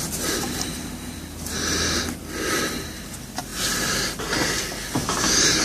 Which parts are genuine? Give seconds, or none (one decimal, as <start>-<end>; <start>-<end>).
0.0-5.0